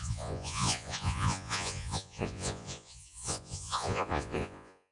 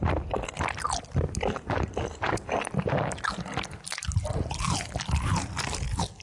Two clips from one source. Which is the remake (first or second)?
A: first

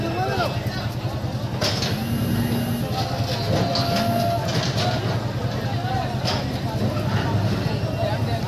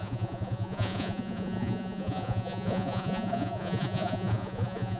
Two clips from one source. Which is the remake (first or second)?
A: second